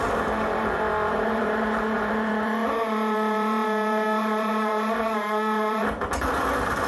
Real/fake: fake